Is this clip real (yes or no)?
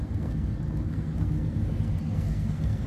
no